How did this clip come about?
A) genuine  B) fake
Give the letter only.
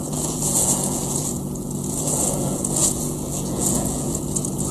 B